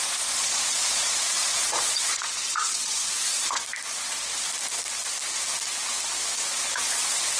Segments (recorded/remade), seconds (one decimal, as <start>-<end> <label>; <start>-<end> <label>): 0.0-3.6 remade; 3.6-6.5 recorded; 6.5-7.4 remade

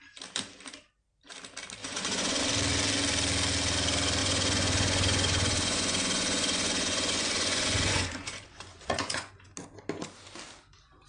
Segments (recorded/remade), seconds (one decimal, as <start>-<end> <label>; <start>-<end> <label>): 0.0-1.8 recorded; 1.8-2.4 remade; 2.4-4.2 recorded; 4.2-9.3 remade; 9.3-11.1 recorded

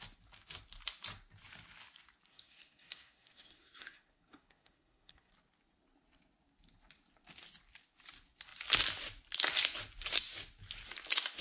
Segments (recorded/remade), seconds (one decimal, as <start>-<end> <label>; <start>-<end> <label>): 0.0-2.3 recorded; 2.3-5.3 remade; 5.3-11.4 recorded

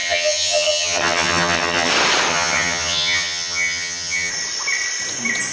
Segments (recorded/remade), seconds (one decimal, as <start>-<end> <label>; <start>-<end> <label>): 0.0-1.9 remade; 1.9-2.3 recorded; 2.3-4.3 remade; 4.3-5.5 recorded